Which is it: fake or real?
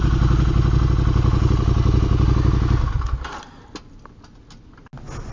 real